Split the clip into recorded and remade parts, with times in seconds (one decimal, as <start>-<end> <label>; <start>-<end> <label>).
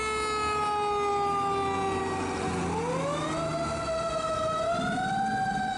0.0-5.8 recorded